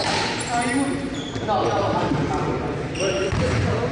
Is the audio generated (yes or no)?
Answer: no